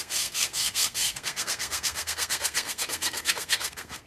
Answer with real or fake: fake